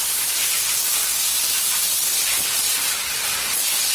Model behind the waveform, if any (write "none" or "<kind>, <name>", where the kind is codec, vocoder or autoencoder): vocoder, BigVGAN v2